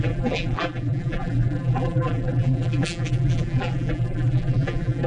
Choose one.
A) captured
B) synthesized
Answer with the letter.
B